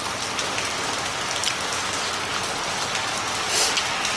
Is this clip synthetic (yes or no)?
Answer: no